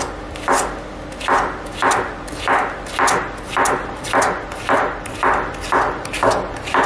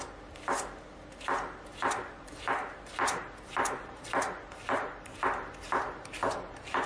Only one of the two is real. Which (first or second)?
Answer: first